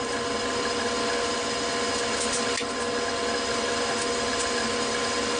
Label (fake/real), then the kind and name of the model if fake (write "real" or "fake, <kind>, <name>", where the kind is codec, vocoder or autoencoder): real